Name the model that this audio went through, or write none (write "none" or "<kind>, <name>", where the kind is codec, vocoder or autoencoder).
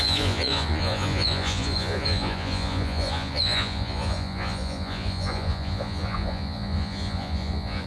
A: vocoder, Vocos